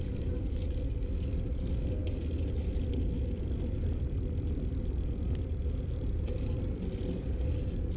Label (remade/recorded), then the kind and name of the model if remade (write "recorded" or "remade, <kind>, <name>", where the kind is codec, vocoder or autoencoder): recorded